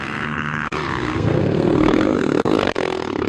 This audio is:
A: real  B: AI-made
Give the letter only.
B